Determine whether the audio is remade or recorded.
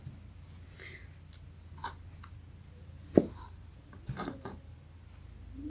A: recorded